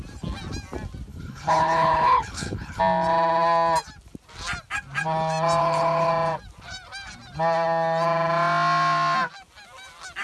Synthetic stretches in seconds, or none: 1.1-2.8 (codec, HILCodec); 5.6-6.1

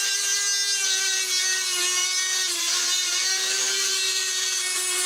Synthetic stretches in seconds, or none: 2.0-5.1 (vocoder, BigVGAN v2)

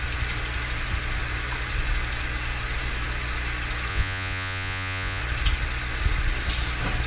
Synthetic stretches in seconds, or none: 3.9-5.2 (vocoder, Vocos)

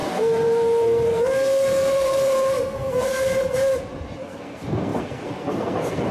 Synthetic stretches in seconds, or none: 0.0-3.7 (codec, SNAC); 4.2-6.1

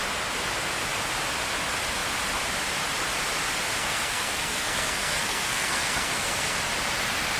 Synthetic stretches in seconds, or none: 3.8-6.6 (codec, SNAC)